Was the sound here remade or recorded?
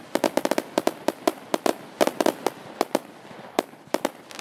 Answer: remade